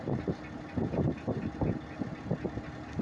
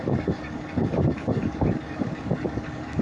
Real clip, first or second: first